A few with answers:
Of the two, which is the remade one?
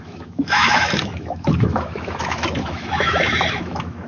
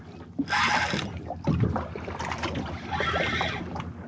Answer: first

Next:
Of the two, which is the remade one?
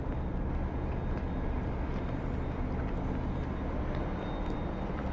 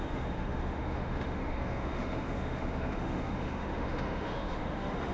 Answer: second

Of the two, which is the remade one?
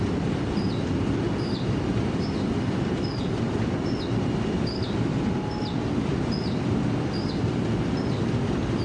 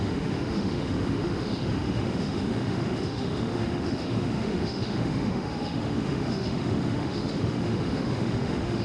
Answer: second